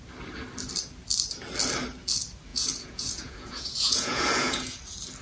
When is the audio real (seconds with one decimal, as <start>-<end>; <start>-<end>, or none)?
0.0-2.5; 4.8-5.2